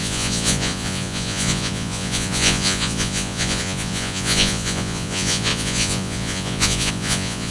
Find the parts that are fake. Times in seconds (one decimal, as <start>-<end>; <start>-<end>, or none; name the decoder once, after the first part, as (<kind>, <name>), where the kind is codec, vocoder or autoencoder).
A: 0.0-7.5 (vocoder, Vocos)